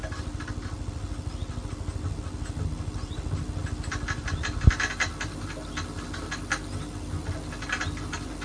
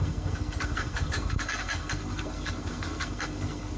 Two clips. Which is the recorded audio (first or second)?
first